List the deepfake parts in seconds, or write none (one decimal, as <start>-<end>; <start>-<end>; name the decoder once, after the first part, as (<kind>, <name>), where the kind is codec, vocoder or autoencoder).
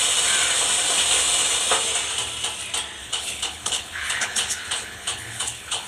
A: 3.0-5.9 (codec, HILCodec)